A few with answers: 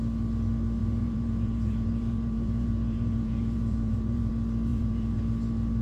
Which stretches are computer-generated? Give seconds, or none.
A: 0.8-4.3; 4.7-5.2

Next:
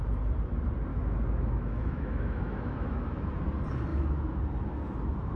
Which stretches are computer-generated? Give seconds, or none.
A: 0.9-3.3; 3.9-4.4

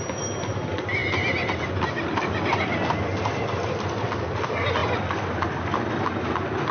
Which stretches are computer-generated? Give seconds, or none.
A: none